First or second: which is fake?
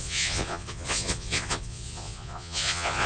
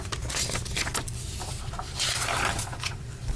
first